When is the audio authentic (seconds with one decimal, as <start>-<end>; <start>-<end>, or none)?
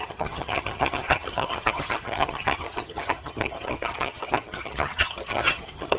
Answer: none